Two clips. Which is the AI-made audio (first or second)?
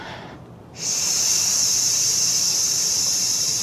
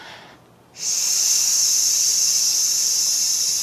first